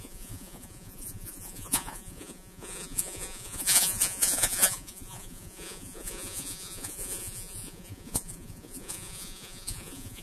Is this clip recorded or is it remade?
remade